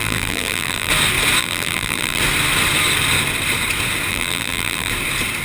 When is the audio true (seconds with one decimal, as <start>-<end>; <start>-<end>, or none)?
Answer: 0.9-1.4; 2.2-4.1; 4.9-5.4